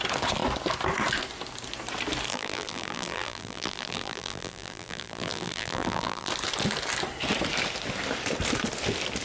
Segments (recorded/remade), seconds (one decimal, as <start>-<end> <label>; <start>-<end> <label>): 0.0-2.3 recorded; 2.3-6.3 remade; 6.3-9.2 recorded